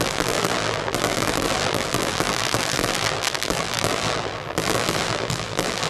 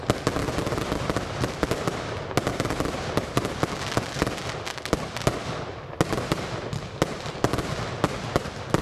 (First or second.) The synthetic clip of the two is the first